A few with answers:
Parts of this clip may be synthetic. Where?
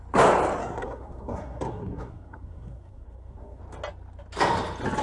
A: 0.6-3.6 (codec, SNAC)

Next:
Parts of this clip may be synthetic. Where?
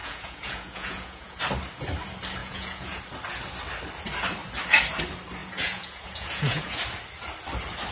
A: 0.0-1.4 (vocoder, Vocos); 2.4-3.0; 5.4-6.8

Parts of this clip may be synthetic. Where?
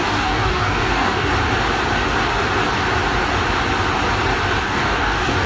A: 0.0-1.3 (codec, DAC); 4.6-5.5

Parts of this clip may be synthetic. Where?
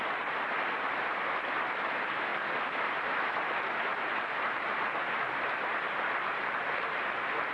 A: none